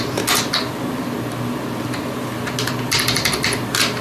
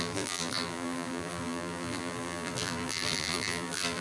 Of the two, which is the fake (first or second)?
second